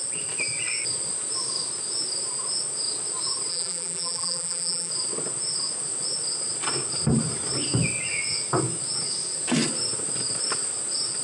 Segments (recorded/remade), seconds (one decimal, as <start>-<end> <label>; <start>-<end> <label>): 0.0-3.5 recorded; 3.5-4.9 remade; 4.9-11.2 recorded